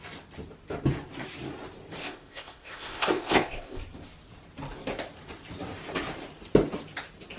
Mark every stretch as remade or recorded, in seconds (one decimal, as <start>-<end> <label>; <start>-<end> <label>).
0.0-2.0 recorded; 2.0-3.8 remade; 3.8-7.4 recorded